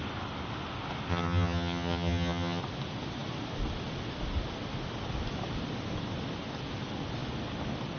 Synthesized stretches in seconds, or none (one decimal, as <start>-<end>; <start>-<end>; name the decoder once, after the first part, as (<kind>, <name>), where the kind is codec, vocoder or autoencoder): 1.1-2.6 (vocoder, HiFi-GAN)